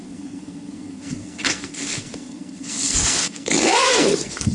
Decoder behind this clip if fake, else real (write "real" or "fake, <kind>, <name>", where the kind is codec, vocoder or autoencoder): fake, codec, SNAC